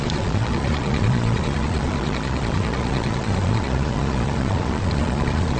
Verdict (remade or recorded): remade